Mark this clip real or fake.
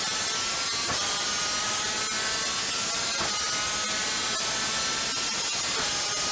real